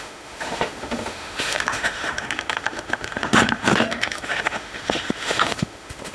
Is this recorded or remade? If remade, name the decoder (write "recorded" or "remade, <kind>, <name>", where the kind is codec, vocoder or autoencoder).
remade, autoencoder, DAC-VAE